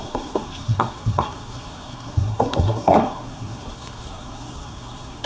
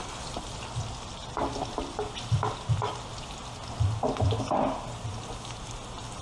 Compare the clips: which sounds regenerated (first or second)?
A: first